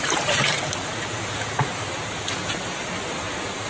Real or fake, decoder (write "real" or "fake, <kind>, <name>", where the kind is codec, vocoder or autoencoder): real